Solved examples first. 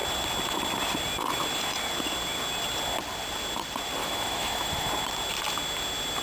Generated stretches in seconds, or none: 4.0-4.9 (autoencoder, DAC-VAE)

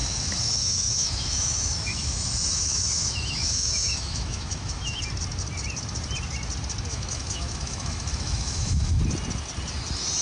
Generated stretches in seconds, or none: 0.0-5.0 (autoencoder, DAC-VAE); 6.9-9.0

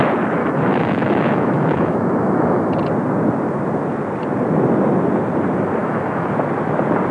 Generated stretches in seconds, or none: 0.4-2.7 (autoencoder, DAC-VAE); 5.8-6.3

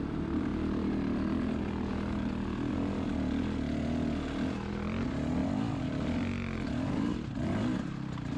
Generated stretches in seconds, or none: none

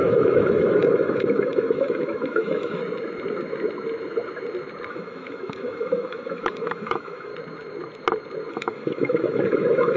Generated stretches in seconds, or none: 0.0-2.8 (autoencoder, DAC-VAE); 4.9-7.3; 8.5-10.0